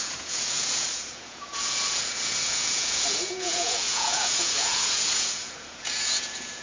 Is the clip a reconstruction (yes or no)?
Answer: yes